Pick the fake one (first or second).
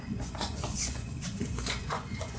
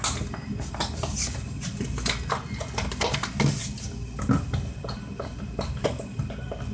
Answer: first